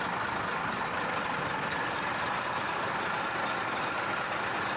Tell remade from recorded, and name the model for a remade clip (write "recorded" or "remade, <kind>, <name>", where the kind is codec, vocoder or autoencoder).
recorded